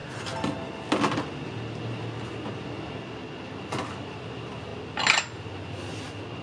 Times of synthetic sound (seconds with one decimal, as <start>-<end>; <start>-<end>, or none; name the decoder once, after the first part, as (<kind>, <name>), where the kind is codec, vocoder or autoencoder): none